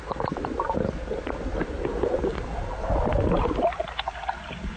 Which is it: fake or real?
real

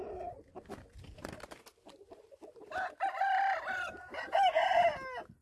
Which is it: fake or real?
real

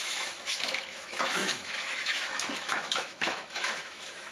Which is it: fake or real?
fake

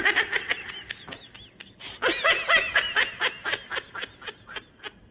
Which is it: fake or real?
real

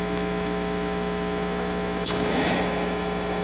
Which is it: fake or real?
fake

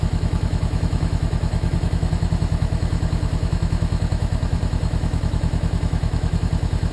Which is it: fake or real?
fake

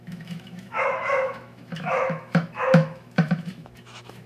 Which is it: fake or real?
fake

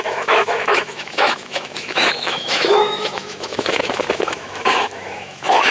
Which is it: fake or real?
fake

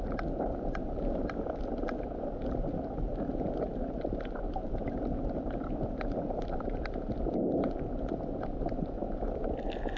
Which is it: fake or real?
real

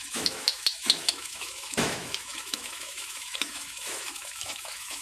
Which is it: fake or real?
fake